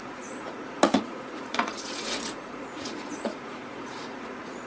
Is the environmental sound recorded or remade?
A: remade